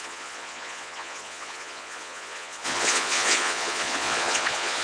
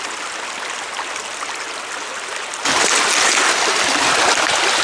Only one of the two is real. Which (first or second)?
second